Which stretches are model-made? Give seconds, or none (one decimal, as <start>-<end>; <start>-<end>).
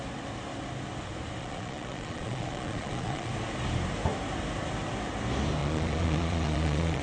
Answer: 1.4-3.3; 5.6-7.0